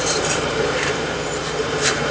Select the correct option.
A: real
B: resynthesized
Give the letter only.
B